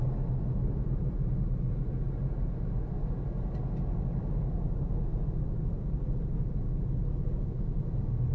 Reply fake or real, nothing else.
real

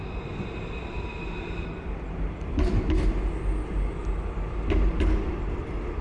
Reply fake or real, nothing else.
real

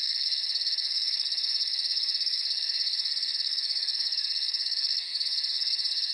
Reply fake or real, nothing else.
fake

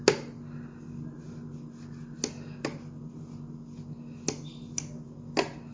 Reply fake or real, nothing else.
real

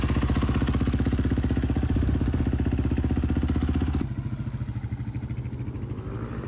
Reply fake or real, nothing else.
real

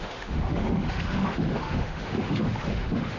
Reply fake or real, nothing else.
fake